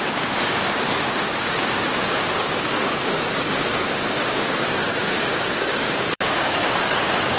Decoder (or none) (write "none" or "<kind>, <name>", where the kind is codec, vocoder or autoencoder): codec, DAC